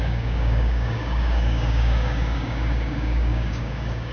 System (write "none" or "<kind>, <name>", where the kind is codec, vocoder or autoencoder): codec, DAC